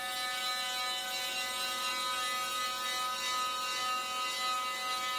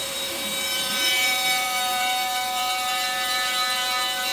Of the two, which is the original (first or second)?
first